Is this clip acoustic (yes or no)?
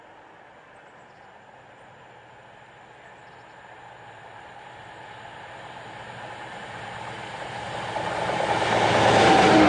yes